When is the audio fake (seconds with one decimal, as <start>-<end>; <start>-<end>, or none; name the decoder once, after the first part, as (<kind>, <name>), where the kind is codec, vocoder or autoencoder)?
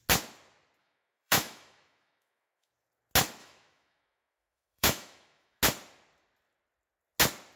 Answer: 0.8-2.7 (autoencoder, DAC-VAE); 3.4-5.6